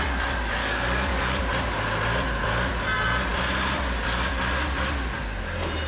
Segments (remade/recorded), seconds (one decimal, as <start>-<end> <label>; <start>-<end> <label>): 0.0-0.6 recorded; 0.6-1.4 remade; 1.4-5.9 recorded